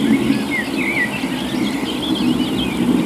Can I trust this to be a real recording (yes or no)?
yes